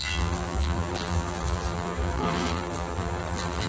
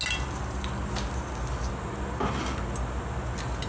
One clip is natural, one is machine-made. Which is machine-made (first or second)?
first